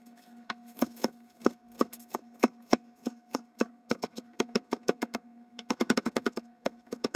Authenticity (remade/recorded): remade